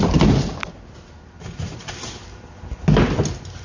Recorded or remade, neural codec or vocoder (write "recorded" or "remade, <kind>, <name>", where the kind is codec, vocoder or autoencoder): recorded